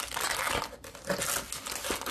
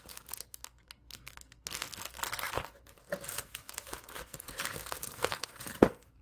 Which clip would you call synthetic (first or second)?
second